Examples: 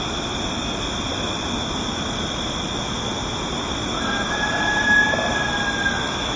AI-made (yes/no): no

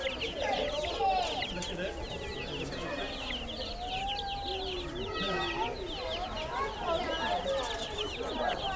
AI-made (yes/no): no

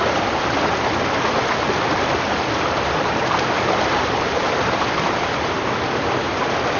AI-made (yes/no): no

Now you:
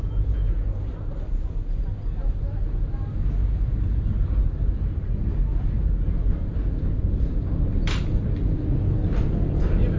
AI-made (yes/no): no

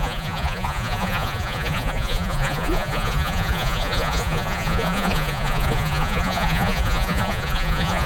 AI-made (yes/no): yes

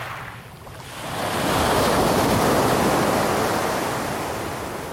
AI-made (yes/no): no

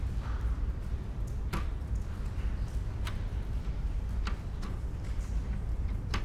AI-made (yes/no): no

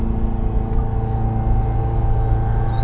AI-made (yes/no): no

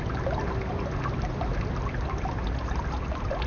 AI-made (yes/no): no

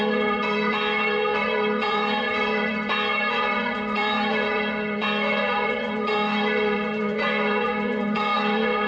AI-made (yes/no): yes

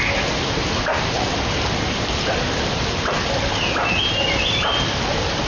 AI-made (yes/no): no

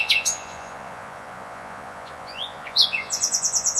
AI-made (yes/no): yes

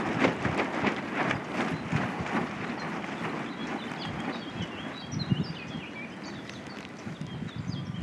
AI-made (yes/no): no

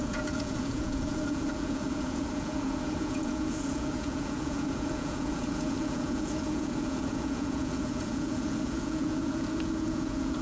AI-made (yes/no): yes